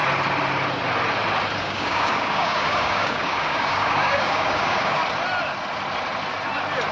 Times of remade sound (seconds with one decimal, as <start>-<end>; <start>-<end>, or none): 1.6-5.0